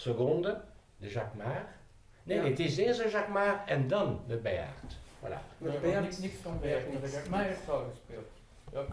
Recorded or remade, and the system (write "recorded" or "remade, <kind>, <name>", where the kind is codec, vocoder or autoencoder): recorded